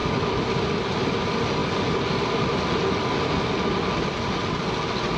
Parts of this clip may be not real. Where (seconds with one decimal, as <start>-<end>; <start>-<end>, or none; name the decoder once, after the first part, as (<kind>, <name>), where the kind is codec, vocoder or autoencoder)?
none